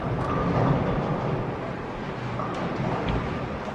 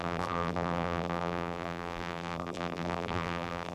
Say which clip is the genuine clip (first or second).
first